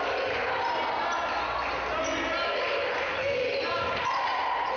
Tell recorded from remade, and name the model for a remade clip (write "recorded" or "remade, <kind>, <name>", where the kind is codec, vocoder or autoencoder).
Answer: recorded